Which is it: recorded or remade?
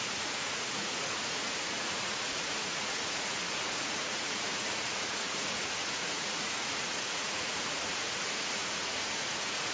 remade